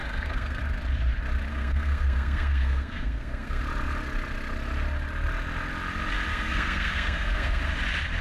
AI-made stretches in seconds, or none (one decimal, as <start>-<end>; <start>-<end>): 0.0-0.6; 1.5-3.6; 6.3-7.7